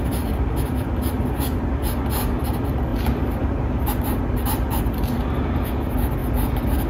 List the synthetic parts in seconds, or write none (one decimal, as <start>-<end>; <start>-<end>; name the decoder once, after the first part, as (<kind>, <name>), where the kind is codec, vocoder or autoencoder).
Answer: none